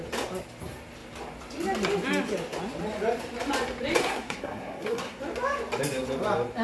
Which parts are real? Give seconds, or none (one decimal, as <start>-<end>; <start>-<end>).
0.0-4.0; 5.2-6.6